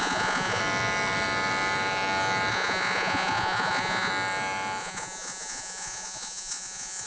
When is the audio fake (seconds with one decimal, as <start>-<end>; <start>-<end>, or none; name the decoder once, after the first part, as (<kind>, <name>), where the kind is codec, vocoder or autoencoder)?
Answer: 0.0-0.6 (vocoder, Vocos); 2.5-4.1; 4.8-7.1